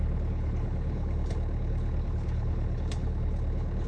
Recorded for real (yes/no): no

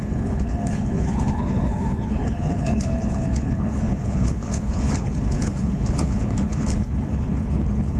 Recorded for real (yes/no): no